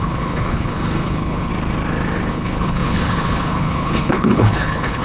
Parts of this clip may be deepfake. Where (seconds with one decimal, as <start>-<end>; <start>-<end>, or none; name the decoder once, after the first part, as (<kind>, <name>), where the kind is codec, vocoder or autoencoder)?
0.0-1.5 (codec, HILCodec); 2.3-5.0